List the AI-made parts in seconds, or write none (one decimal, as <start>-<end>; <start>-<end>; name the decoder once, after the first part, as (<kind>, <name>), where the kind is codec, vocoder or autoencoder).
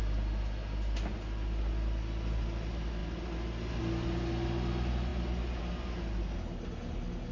none